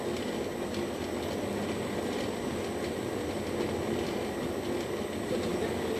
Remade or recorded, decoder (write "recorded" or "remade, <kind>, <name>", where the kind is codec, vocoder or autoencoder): recorded